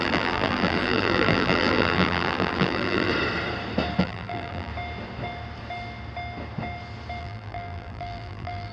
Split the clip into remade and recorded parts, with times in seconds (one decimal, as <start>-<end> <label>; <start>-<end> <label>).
0.0-3.1 remade; 3.1-4.0 recorded; 4.0-4.7 remade; 4.7-7.2 recorded; 7.2-8.7 remade